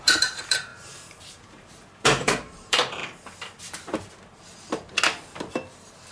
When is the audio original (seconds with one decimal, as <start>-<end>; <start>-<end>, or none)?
3.0-6.1